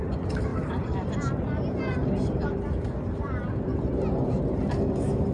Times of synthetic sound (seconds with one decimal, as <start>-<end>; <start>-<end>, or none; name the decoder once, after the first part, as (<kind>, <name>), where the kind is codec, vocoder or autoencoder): 0.5-1.3 (vocoder, BigVGAN v2); 2.0-3.9